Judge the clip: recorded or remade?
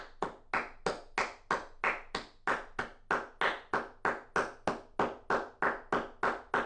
recorded